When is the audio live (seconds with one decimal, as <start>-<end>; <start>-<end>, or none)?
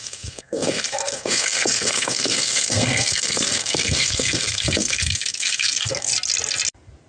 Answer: 6.1-7.1